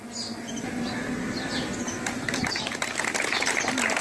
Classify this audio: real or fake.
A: real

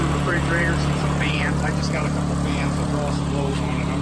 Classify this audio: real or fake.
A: fake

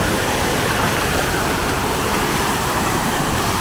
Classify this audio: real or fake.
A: fake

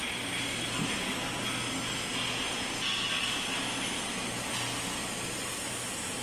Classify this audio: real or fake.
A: real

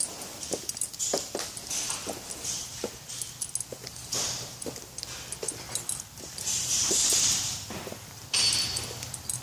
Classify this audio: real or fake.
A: real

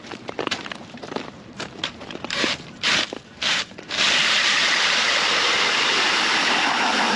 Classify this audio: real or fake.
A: fake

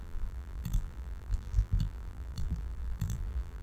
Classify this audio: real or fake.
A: fake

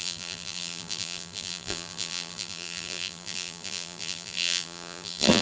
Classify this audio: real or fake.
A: fake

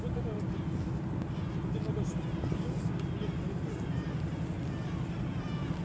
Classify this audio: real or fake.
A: real